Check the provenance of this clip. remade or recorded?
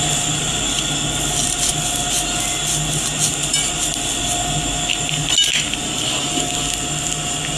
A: recorded